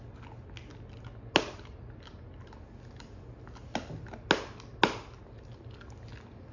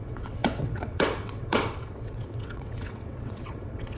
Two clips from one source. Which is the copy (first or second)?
second